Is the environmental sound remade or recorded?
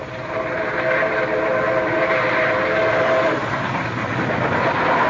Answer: recorded